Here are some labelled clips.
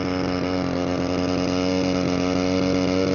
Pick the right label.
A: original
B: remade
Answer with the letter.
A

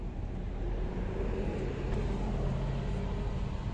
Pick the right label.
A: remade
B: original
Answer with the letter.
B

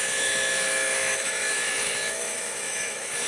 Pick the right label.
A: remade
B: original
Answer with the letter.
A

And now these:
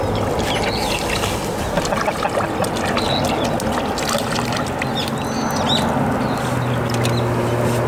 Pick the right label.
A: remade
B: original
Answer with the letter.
B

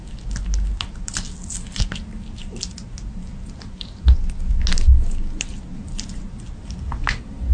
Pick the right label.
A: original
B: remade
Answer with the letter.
A